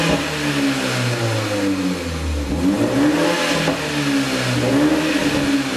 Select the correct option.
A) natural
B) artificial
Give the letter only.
A